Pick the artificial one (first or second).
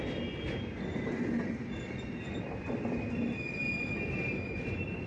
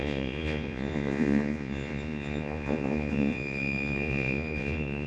second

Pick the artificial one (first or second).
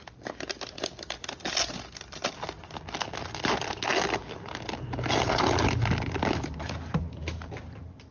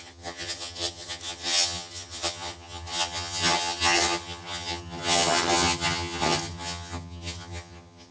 second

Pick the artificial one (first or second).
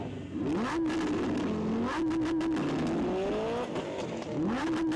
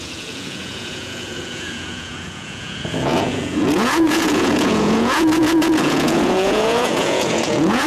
second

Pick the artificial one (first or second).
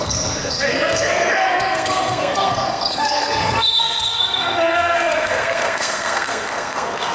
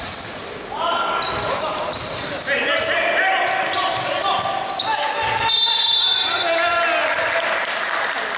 first